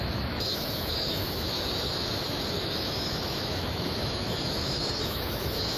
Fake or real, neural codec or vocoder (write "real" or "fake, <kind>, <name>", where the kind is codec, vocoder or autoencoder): fake, autoencoder, DAC-VAE